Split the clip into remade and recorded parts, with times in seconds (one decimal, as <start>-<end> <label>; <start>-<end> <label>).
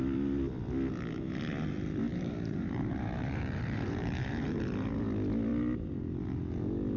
0.0-2.1 recorded; 2.1-4.6 remade; 4.6-7.0 recorded